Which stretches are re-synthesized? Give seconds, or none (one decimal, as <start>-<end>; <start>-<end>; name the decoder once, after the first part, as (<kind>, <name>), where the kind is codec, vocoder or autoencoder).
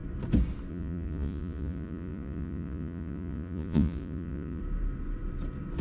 0.7-4.6 (vocoder, Vocos)